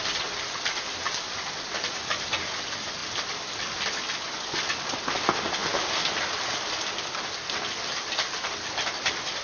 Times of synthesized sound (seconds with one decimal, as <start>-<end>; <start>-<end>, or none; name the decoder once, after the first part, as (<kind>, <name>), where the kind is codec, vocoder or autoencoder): none